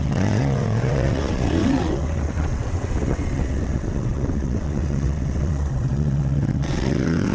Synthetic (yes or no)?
yes